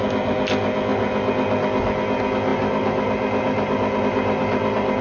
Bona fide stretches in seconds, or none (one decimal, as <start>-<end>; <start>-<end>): 0.0-5.0